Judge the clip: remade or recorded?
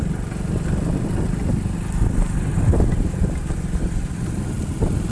recorded